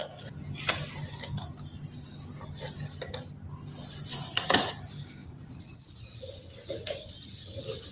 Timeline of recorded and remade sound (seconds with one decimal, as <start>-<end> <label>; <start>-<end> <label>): 0.0-4.1 recorded; 4.1-4.7 remade; 4.7-5.2 recorded; 5.2-6.0 remade; 6.0-7.9 recorded

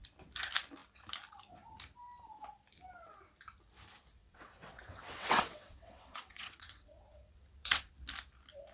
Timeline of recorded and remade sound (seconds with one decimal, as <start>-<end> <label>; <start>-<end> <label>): 0.0-4.2 recorded; 4.2-7.9 remade; 7.9-8.7 recorded

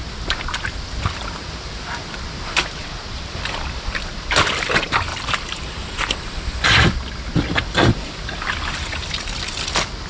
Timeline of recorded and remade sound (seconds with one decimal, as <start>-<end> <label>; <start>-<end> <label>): 0.0-2.8 recorded; 2.8-3.9 remade; 3.9-5.1 recorded; 5.1-6.1 remade; 6.1-7.5 recorded; 7.5-9.2 remade; 9.2-10.1 recorded

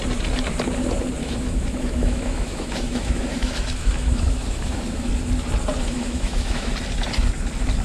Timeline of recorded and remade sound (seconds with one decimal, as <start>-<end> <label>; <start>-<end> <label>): 0.0-1.2 recorded; 1.2-5.1 remade; 5.1-5.8 recorded; 5.8-6.7 remade; 6.7-7.8 recorded

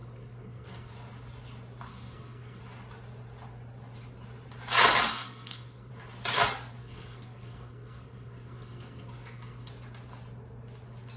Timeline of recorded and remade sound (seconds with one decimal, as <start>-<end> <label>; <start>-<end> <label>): 0.0-0.9 remade; 0.9-1.9 recorded; 1.9-2.6 remade; 2.6-5.1 recorded; 5.1-5.9 remade; 5.9-6.8 recorded; 6.8-9.7 remade; 9.7-11.2 recorded